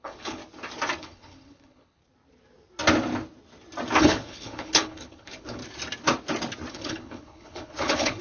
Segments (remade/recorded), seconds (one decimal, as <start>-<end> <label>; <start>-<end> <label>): 0.0-0.4 remade; 0.4-1.0 recorded; 1.0-2.0 remade; 2.0-4.0 recorded; 4.0-5.6 remade; 5.6-6.7 recorded; 6.7-8.2 remade

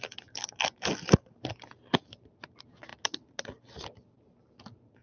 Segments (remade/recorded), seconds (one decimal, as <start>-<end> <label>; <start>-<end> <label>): 0.0-5.0 recorded

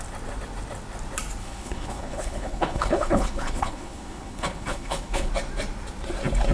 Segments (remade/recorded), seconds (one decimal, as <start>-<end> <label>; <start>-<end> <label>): 0.0-1.4 recorded; 1.4-5.3 remade; 5.3-6.5 recorded

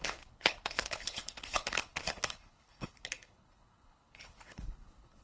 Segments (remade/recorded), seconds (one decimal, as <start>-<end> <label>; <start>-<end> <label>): 0.0-5.2 remade

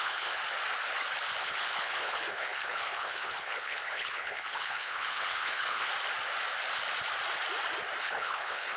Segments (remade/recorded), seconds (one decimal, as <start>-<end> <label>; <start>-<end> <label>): 0.0-0.4 remade; 0.4-1.4 recorded; 1.4-5.9 remade; 5.9-8.0 recorded; 8.0-8.8 remade

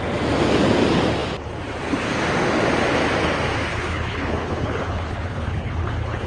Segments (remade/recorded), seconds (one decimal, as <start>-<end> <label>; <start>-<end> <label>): 0.0-3.7 recorded; 3.7-6.3 remade